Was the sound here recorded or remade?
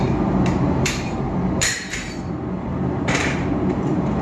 remade